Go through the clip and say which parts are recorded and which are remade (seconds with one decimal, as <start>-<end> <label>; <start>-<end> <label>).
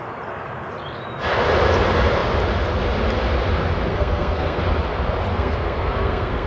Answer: 0.0-3.9 recorded; 3.9-4.6 remade; 4.6-5.3 recorded; 5.3-6.5 remade